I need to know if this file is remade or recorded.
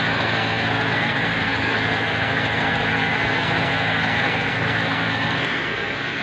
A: remade